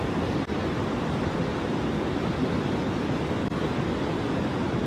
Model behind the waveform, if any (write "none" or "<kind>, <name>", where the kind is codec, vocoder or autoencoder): none